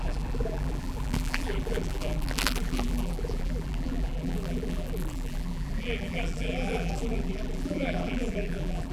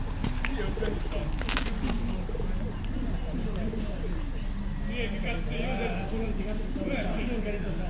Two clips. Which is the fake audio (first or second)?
first